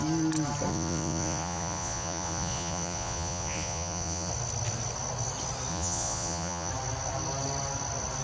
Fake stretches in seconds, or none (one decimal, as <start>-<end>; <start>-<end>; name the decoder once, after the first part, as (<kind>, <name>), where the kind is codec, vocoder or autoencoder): 0.7-4.3 (vocoder, Vocos); 5.7-6.7